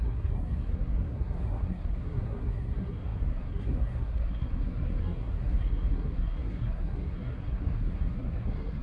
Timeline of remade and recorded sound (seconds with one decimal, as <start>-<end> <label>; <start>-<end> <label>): 0.0-8.8 remade